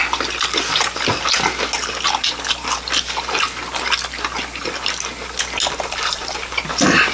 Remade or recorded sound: recorded